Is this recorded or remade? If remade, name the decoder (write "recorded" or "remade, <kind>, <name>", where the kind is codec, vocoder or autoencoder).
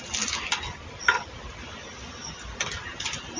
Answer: recorded